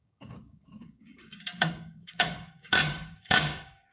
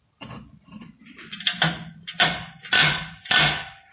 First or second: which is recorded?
second